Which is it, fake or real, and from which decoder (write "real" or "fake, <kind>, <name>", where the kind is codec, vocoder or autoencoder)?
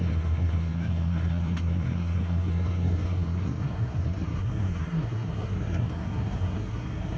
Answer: fake, codec, SNAC